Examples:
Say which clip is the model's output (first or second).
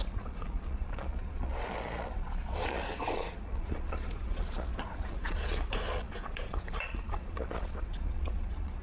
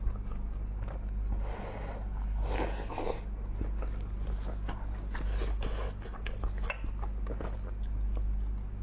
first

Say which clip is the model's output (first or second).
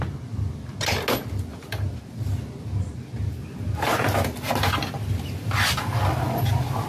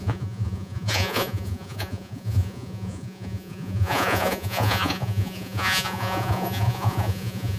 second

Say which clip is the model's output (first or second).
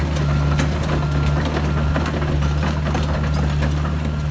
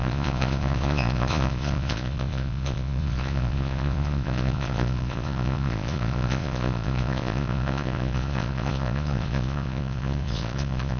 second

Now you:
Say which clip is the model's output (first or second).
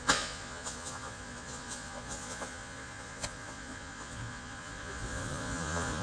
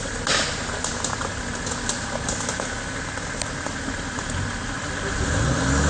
first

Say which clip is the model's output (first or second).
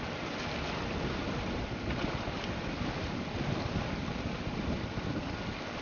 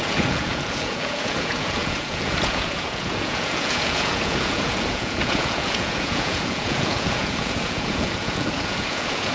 second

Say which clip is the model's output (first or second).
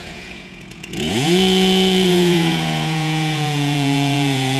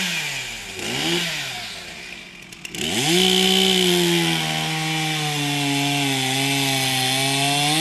first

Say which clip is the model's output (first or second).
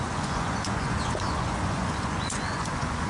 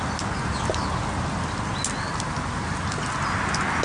first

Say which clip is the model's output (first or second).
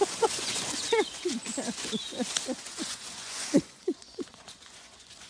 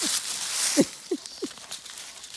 first